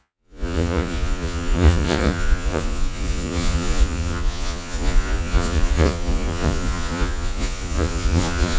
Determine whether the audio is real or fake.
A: fake